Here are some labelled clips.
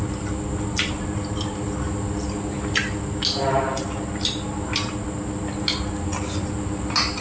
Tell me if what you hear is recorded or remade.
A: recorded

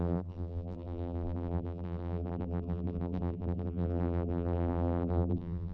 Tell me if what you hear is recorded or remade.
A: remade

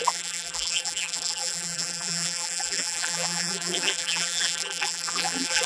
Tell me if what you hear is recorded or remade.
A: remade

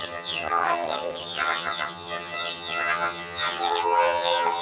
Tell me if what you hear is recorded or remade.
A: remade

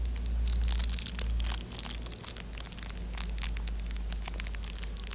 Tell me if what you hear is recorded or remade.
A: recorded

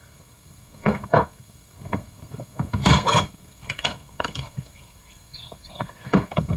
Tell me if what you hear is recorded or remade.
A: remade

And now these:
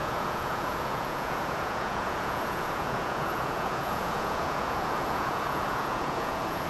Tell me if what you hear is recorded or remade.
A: remade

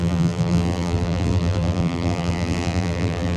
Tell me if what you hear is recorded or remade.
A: remade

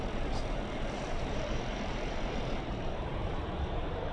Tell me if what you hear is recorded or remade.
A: remade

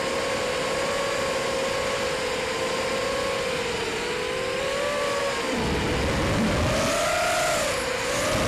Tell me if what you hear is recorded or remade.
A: recorded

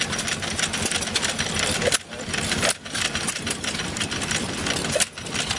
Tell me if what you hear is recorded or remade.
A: recorded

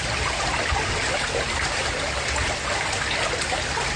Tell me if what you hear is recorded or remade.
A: recorded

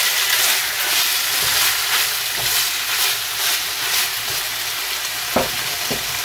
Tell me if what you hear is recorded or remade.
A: recorded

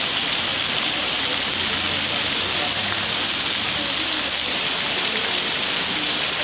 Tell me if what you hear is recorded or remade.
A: recorded